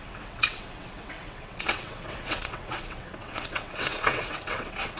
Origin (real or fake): fake